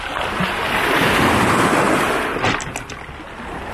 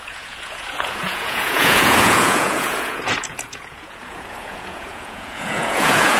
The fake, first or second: second